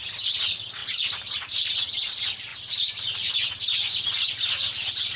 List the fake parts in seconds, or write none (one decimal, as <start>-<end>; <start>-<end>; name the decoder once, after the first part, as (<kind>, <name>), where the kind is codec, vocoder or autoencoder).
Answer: 0.8-1.7 (vocoder, BigVGAN v2); 2.5-5.2